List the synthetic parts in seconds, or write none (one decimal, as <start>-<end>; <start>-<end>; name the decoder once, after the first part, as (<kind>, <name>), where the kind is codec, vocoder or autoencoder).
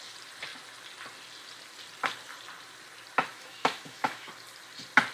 3.3-4.3 (autoencoder, DAC-VAE)